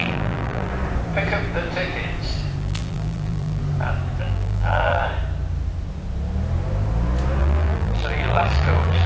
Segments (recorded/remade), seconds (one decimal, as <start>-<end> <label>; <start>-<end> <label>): 0.0-0.7 remade; 0.7-2.6 recorded; 2.6-3.6 remade; 3.6-4.2 recorded; 4.2-5.0 remade; 5.0-7.4 recorded; 7.4-9.1 remade